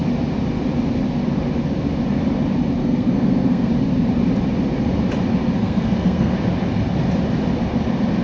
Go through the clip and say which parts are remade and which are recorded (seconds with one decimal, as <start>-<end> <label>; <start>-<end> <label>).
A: 0.0-2.8 recorded; 2.8-3.7 remade; 3.7-5.6 recorded; 5.6-6.3 remade; 6.3-8.2 recorded